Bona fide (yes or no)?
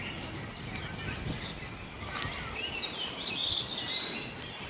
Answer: yes